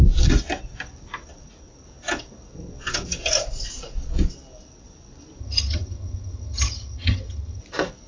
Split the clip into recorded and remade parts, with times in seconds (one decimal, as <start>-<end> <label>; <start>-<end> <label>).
0.0-5.4 recorded; 5.4-7.6 remade; 7.6-8.1 recorded